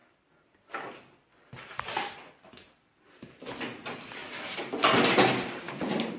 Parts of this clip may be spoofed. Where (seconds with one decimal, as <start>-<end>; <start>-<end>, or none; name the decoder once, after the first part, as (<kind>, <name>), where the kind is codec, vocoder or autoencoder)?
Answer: 0.0-3.4 (vocoder, BigVGAN v2)